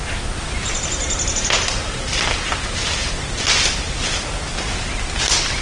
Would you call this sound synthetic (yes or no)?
no